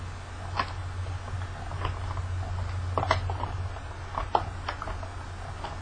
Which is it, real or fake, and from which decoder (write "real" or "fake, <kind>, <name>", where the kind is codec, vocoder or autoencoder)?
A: real